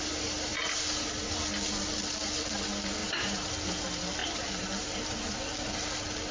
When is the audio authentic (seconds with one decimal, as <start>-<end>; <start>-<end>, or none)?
0.0-3.0; 3.5-4.2; 5.2-6.3